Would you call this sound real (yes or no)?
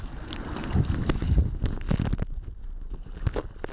yes